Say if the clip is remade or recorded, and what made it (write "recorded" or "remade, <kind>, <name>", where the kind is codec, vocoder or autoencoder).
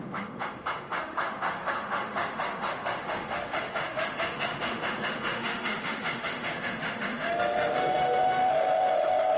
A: remade, autoencoder, DAC-VAE